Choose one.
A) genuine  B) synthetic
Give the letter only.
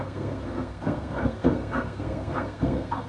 B